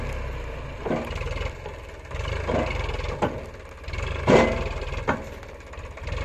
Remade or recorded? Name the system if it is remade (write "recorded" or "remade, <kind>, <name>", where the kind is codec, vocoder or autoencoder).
recorded